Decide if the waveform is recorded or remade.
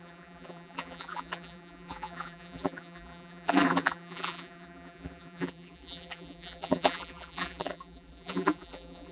remade